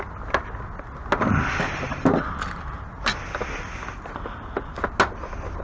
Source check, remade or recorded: recorded